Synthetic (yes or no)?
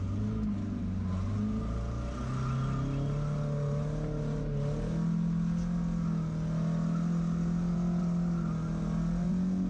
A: no